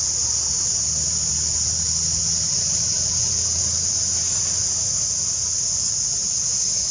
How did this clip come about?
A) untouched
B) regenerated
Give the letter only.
A